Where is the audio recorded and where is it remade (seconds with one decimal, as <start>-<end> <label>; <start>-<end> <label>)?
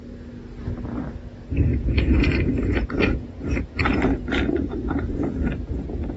0.0-1.7 recorded; 1.7-5.4 remade; 5.4-6.2 recorded